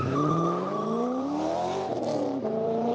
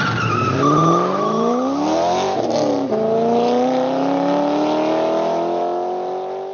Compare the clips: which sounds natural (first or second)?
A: second